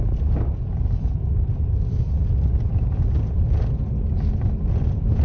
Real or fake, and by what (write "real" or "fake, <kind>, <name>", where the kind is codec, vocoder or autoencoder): real